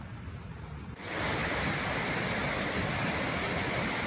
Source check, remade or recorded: recorded